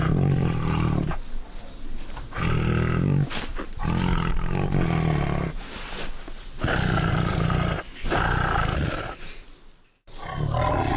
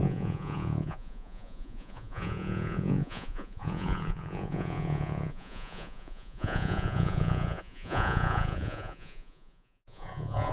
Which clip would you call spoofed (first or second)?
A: second